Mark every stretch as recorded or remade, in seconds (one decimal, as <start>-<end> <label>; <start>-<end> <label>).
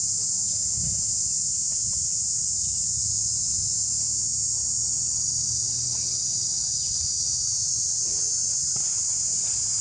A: 0.0-9.8 recorded